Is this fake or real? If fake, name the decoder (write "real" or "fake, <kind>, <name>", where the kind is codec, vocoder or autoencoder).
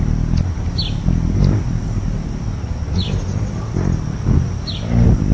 real